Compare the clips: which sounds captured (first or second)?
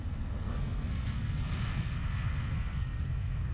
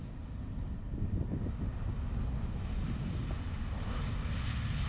second